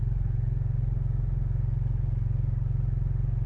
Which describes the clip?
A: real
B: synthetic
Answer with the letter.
A